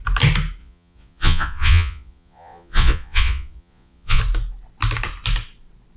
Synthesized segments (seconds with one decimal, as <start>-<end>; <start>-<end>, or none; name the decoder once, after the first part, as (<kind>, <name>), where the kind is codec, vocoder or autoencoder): 0.6-4.2 (vocoder, Vocos)

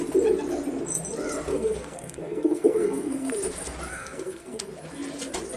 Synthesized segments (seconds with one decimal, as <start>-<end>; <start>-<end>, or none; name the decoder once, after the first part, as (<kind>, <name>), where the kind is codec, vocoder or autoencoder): 1.5-3.3 (codec, SNAC); 3.9-4.6

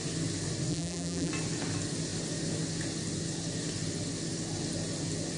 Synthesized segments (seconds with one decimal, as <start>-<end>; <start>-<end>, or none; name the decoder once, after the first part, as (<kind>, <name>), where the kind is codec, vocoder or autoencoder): 0.7-1.3 (vocoder, BigVGAN v2)

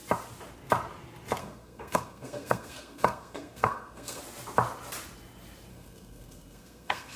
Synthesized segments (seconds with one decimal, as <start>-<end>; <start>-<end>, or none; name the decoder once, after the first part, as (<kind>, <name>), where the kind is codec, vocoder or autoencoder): 1.4-4.2 (codec, SNAC); 5.7-7.2

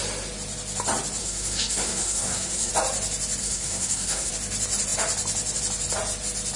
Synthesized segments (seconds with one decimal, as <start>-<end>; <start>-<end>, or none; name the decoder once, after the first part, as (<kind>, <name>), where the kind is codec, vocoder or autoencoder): 1.2-2.7 (codec, SNAC); 3.4-4.3

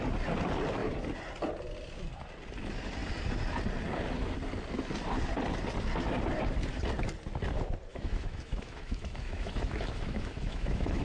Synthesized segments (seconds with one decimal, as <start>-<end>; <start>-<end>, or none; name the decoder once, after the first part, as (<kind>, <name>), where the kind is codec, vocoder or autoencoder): 7.9-11.0 (autoencoder, DAC-VAE)